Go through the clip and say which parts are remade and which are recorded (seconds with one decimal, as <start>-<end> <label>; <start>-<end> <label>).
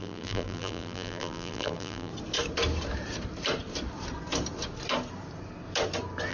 0.0-2.1 remade; 2.1-6.3 recorded